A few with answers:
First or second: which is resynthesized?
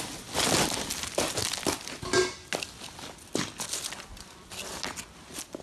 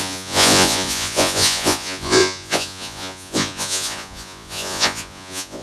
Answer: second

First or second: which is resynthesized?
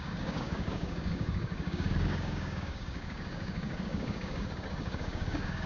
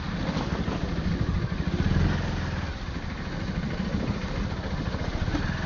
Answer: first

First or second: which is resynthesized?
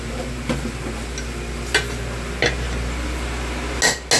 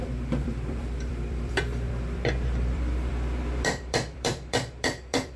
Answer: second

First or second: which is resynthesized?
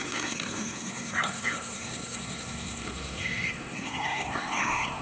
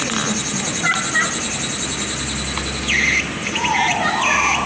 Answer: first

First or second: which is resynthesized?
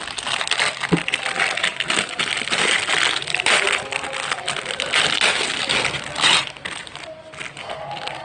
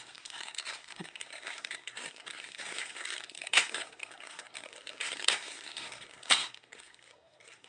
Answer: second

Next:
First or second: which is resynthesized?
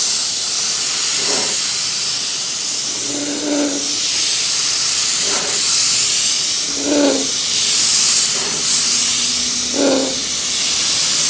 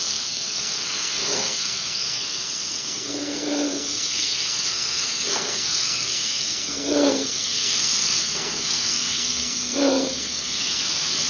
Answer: second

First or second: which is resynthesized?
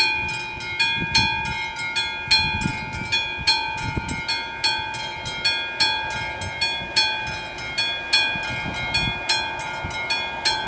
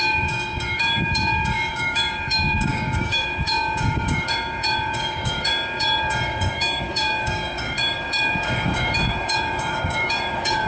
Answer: second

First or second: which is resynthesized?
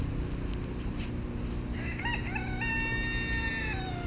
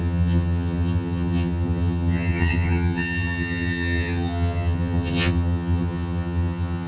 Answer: second